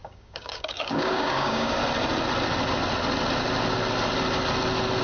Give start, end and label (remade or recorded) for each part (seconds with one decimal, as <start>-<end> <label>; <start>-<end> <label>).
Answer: 0.0-1.8 remade; 1.8-5.0 recorded